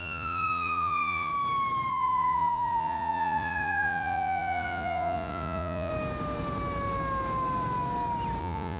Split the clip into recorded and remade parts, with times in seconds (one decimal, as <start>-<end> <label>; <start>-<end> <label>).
0.0-1.3 remade; 1.3-1.9 recorded; 1.9-5.9 remade; 5.9-8.4 recorded; 8.4-8.8 remade